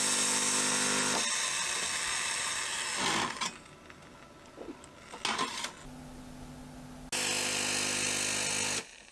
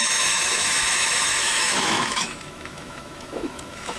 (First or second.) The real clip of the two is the first